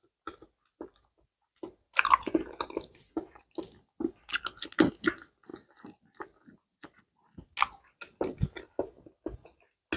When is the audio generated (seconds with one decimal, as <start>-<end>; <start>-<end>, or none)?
none